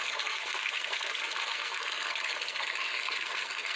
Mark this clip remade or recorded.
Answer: remade